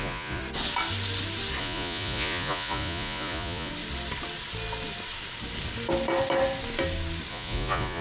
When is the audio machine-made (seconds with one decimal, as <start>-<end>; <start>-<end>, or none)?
0.0-0.4; 1.6-3.7; 7.3-8.0